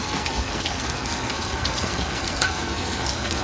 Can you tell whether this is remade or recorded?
remade